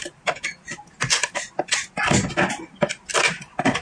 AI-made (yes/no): no